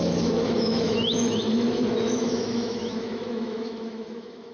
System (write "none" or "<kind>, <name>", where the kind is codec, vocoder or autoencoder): autoencoder, DAC-VAE